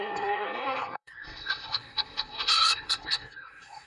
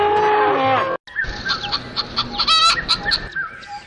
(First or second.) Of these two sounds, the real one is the second